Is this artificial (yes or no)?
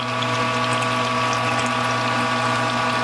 no